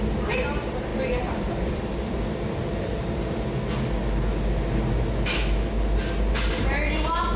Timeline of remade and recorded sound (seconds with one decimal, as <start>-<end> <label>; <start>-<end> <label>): 0.0-0.9 recorded; 0.9-2.4 remade; 2.4-7.4 recorded